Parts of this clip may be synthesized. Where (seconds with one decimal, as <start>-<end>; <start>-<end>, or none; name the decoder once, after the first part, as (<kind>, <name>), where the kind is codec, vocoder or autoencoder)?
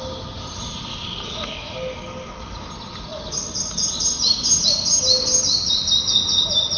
0.9-2.7 (codec, DAC)